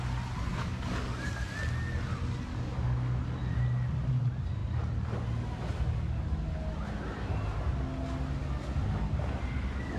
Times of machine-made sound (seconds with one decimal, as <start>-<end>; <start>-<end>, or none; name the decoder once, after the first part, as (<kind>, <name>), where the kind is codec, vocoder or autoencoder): 0.5-1.3 (codec, DAC); 2.5-3.2